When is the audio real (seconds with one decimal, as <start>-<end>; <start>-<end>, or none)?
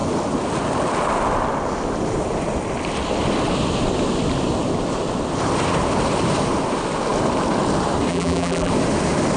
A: 0.0-8.1; 8.7-9.4